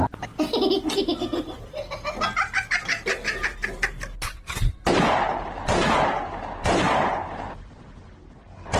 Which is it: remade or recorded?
recorded